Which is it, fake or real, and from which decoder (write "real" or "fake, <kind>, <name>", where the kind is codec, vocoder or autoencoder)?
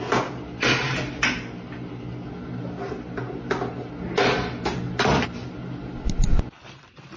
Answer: real